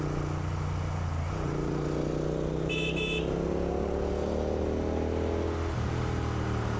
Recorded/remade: recorded